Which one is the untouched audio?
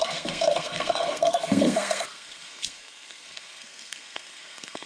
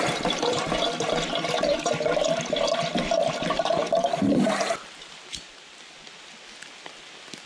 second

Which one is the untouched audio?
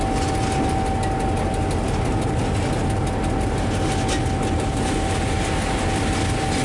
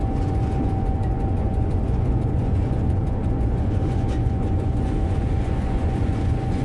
first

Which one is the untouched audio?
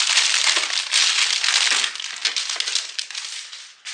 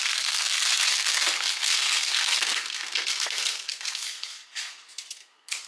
first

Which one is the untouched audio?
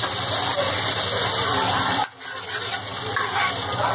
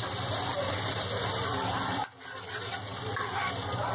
first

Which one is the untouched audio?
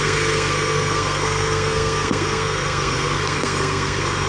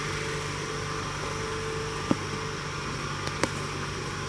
second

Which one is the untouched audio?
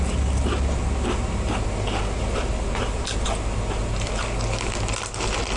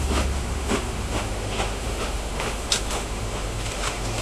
first